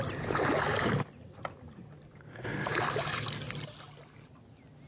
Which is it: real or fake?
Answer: real